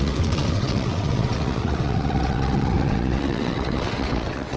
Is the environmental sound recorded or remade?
remade